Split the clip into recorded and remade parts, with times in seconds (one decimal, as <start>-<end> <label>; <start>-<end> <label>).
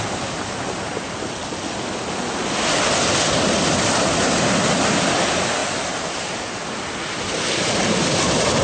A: 0.0-8.6 recorded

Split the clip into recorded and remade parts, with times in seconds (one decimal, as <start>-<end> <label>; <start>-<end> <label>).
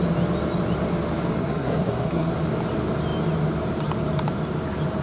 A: 0.0-1.4 recorded; 1.4-2.3 remade; 2.3-5.0 recorded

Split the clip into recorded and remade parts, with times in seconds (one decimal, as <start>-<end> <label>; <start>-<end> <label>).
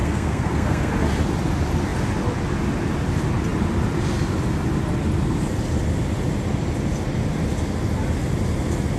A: 0.0-0.9 remade; 0.9-9.0 recorded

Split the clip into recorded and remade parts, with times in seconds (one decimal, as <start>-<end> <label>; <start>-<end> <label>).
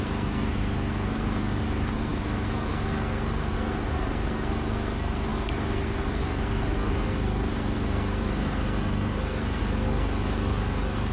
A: 0.0-11.1 remade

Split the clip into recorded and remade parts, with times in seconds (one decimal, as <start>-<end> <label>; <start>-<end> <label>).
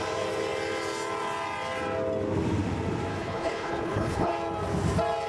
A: 0.0-3.1 recorded; 3.1-4.3 remade; 4.3-5.3 recorded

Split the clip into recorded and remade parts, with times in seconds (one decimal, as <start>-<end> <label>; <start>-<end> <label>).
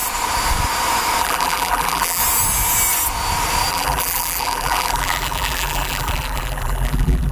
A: 0.0-1.2 recorded; 1.2-2.2 remade; 2.2-3.7 recorded; 3.7-7.3 remade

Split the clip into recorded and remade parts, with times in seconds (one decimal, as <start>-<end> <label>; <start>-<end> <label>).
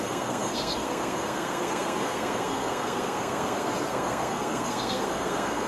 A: 0.0-5.7 remade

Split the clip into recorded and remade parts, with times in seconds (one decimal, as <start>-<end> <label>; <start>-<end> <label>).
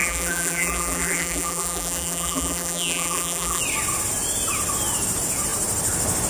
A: 0.0-3.6 remade; 3.6-6.3 recorded